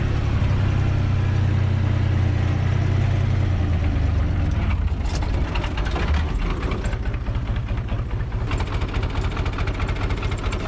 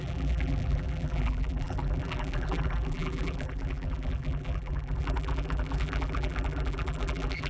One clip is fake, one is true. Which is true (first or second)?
first